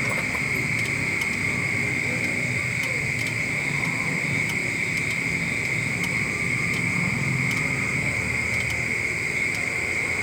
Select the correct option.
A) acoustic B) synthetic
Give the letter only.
A